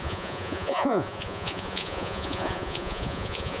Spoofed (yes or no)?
yes